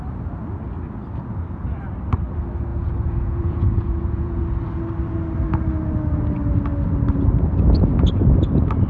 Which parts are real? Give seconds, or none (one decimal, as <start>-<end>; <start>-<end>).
0.0-2.7; 4.4-8.9